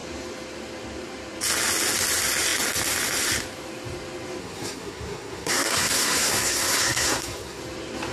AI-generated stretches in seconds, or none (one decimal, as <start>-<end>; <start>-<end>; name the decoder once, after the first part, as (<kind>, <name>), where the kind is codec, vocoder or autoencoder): 4.4-7.6 (codec, SNAC)